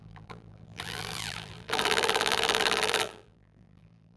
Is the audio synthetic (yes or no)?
yes